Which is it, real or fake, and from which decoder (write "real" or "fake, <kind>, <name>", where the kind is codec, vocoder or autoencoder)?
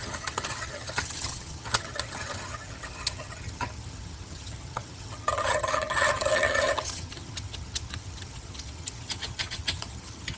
fake, vocoder, HiFi-GAN